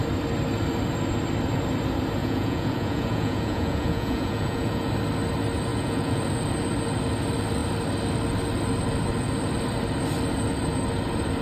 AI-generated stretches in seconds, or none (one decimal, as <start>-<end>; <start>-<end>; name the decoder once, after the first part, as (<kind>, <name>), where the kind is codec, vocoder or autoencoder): 2.2-4.9 (vocoder, Vocos); 5.7-6.2